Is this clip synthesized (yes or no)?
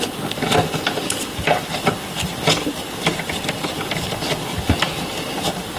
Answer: no